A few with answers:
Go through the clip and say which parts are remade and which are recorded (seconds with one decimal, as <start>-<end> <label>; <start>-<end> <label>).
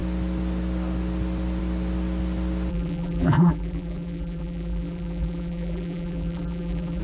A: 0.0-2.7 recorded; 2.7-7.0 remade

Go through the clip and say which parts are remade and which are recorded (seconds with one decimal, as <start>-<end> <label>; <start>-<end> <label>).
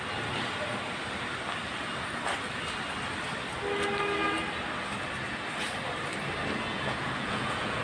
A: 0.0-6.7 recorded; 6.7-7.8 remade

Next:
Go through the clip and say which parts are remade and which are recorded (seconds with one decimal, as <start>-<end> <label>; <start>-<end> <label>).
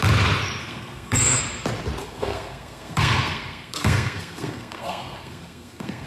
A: 0.0-0.6 recorded; 0.6-1.4 remade; 1.4-2.0 recorded; 2.0-6.1 remade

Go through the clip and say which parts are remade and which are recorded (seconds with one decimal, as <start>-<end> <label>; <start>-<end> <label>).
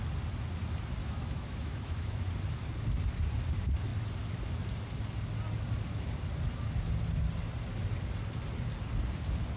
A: 0.0-1.0 recorded; 1.0-2.3 remade; 2.3-9.6 recorded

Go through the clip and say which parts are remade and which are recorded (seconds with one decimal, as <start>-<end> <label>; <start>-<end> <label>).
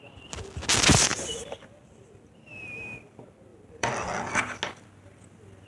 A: 0.0-1.1 recorded; 1.1-2.3 remade; 2.3-3.5 recorded; 3.5-4.3 remade; 4.3-5.7 recorded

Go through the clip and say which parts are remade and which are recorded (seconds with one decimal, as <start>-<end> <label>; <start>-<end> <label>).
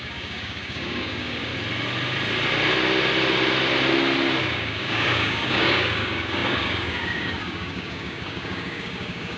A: 0.0-1.5 remade; 1.5-4.4 recorded; 4.4-9.4 remade